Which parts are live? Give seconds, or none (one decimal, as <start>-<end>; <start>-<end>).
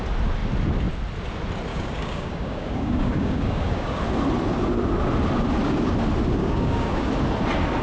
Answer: 0.0-1.7; 4.0-6.4; 7.1-7.8